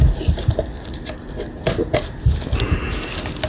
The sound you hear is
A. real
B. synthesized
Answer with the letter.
A